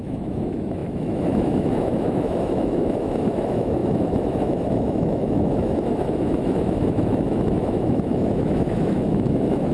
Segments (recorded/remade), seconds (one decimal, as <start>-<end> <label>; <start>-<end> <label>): 0.0-9.7 remade